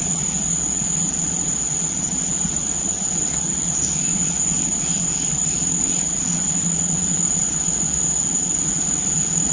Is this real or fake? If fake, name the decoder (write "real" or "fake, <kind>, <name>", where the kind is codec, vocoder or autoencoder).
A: fake, vocoder, Vocos